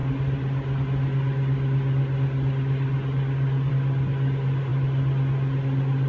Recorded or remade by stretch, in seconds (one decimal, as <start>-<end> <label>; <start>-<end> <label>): 0.0-6.1 recorded